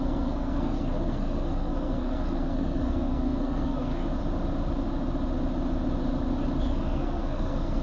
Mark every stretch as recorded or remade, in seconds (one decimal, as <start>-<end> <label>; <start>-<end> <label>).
0.0-4.0 remade; 4.0-6.6 recorded; 6.6-7.8 remade